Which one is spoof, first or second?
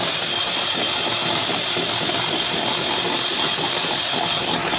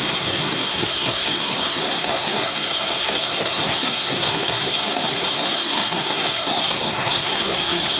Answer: second